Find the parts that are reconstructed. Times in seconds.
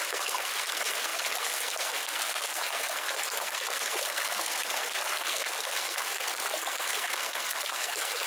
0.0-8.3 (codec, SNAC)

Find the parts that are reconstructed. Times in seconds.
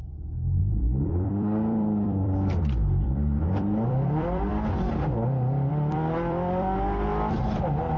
0.6-4.5 (vocoder, BigVGAN v2); 5.7-7.1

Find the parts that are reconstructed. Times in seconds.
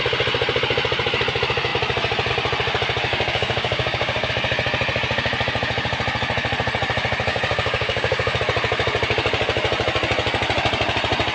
3.1-4.3 (codec, DAC); 7.3-8.4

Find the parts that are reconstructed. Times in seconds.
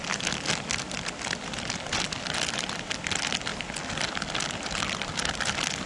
none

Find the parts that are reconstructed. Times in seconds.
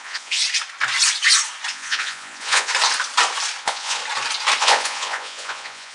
0.0-0.4 (vocoder, Vocos); 1.7-2.7; 3.6-4.0; 4.6-5.9